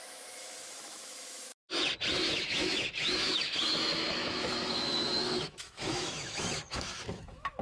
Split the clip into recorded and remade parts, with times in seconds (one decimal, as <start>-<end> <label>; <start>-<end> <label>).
0.0-1.5 remade; 1.5-2.1 recorded; 2.1-7.6 remade